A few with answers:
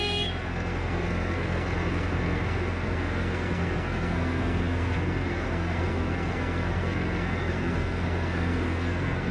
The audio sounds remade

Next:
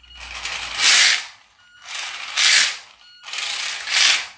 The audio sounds recorded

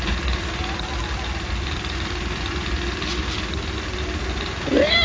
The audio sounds recorded